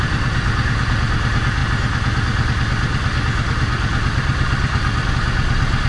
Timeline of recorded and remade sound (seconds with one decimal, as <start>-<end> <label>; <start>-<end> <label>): 0.0-5.9 recorded